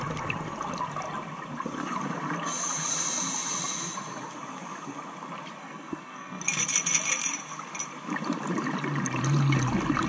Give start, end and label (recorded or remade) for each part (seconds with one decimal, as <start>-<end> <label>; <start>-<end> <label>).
0.0-5.6 recorded; 5.6-6.4 remade; 6.4-10.1 recorded

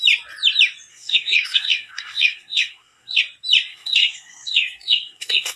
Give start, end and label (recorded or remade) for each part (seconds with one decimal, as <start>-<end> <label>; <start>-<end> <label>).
0.0-0.9 recorded; 0.9-3.2 remade; 3.2-3.7 recorded; 3.7-5.6 remade